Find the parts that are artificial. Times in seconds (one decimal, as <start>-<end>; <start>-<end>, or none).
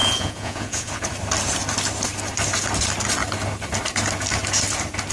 0.0-1.0